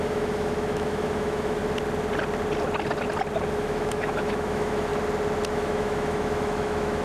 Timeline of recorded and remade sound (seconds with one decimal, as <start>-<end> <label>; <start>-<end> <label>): 0.0-1.6 remade; 1.6-3.5 recorded; 3.5-4.9 remade; 4.9-5.5 recorded; 5.5-7.0 remade